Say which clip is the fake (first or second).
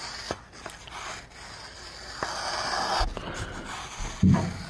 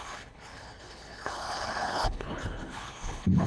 second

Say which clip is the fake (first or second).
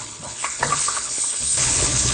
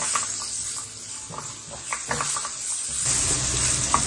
first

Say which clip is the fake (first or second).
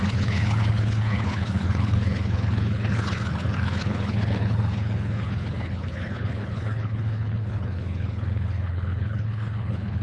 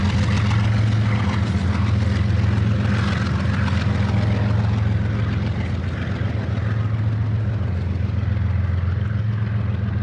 first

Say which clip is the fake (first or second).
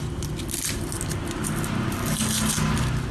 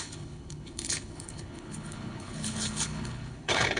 second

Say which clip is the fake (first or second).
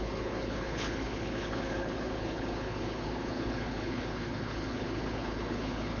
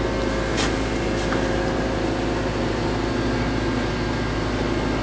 first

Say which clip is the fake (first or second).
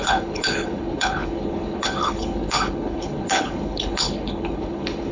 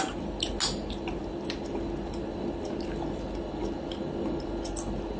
first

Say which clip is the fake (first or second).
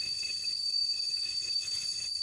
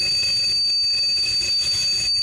first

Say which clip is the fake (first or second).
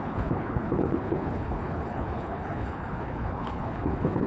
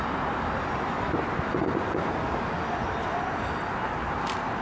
first